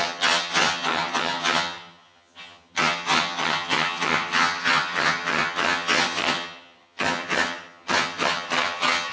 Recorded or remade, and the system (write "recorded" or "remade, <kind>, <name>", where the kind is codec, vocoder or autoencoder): remade, vocoder, HiFi-GAN